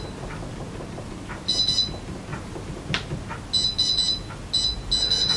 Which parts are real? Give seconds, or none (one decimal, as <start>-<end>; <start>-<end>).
0.0-5.4